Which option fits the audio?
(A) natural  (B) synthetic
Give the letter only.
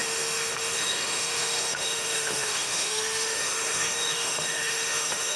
B